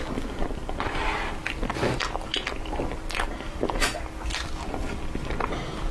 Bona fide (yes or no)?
yes